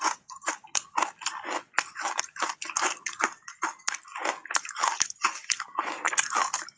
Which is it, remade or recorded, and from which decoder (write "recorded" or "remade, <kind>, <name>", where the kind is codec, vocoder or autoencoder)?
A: recorded